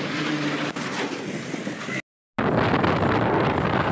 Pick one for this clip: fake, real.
real